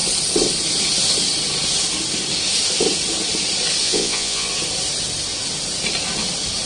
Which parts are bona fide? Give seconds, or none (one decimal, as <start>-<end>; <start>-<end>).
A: 0.0-3.8; 4.5-6.7